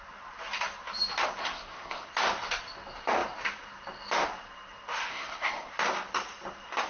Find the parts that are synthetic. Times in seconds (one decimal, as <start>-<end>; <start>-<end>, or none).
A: 1.4-2.1; 5.1-5.7